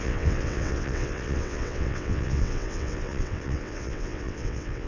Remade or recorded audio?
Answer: remade